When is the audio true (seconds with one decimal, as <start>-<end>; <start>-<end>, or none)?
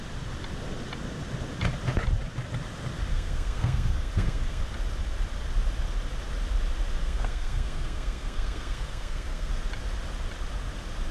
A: 0.0-3.1; 4.6-7.0; 9.5-11.1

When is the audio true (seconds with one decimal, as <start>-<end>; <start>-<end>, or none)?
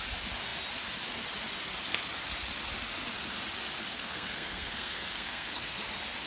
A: 0.0-3.9; 5.8-6.3